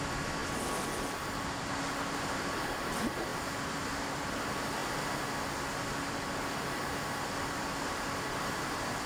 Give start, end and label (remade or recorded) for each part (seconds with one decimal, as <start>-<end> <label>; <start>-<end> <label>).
0.0-9.1 recorded